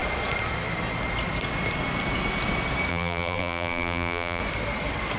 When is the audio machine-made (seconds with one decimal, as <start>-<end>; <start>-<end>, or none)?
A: 2.9-4.4